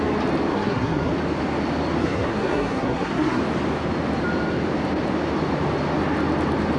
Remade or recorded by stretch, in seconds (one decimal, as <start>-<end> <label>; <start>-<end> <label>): 0.0-0.5 recorded; 0.5-1.1 remade; 1.1-2.0 recorded; 2.0-3.4 remade; 3.4-6.8 recorded